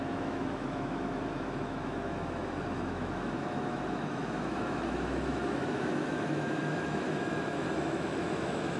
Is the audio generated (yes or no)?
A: yes